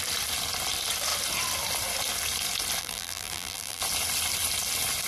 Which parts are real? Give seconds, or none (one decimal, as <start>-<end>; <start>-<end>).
0.0-2.8; 3.8-5.1